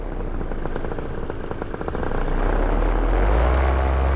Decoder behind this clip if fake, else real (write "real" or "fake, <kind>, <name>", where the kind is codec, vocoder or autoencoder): real